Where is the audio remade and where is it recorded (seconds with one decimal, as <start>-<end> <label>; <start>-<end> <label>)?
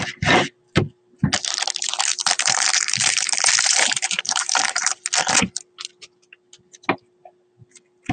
0.0-2.2 recorded; 2.2-5.0 remade; 5.0-8.1 recorded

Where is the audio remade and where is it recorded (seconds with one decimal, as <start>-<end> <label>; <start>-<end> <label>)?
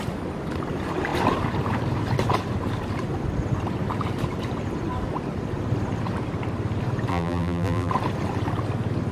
0.0-7.1 recorded; 7.1-7.9 remade; 7.9-9.1 recorded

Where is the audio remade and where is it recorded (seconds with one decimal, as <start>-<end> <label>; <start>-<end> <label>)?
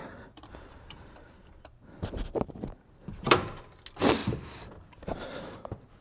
0.0-3.6 remade; 3.6-6.0 recorded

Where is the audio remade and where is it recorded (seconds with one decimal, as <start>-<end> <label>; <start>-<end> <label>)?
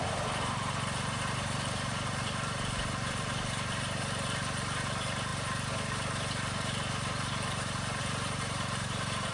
0.0-9.3 remade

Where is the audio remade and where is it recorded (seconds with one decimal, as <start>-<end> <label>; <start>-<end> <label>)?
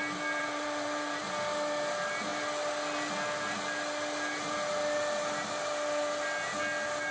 0.0-0.4 recorded; 0.4-1.2 remade; 1.2-7.1 recorded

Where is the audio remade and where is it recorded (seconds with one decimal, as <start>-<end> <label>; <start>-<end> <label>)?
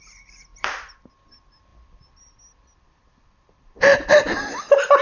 0.0-0.5 recorded; 0.5-1.1 remade; 1.1-1.7 recorded; 1.7-5.0 remade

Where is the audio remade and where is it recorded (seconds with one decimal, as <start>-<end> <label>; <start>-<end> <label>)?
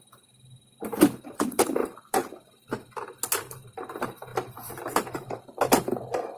0.0-1.8 recorded; 1.8-2.7 remade; 2.7-4.3 recorded; 4.3-5.4 remade; 5.4-6.4 recorded